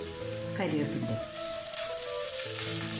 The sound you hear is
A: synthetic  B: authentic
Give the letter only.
B